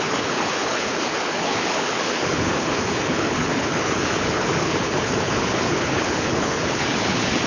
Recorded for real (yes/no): no